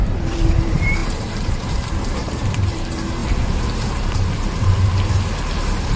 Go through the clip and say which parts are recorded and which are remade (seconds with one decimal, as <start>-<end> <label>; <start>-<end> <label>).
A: 0.0-4.9 remade; 4.9-5.6 recorded; 5.6-6.0 remade